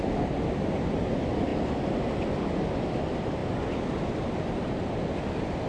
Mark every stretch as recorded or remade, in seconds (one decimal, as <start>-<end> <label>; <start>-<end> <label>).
0.0-5.7 recorded